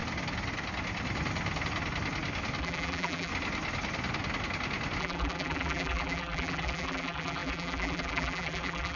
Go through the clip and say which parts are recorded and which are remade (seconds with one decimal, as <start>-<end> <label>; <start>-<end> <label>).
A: 0.0-2.6 recorded; 2.6-3.3 remade; 3.3-5.0 recorded; 5.0-9.0 remade